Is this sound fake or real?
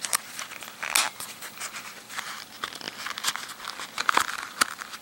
real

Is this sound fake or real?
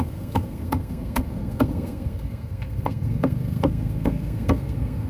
fake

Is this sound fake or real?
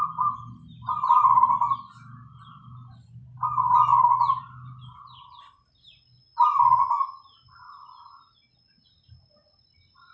real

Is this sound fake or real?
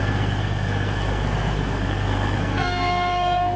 fake